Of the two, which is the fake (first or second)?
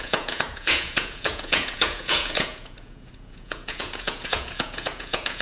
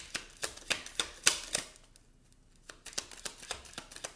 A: first